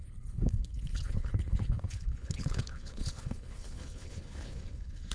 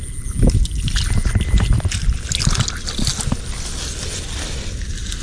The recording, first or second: second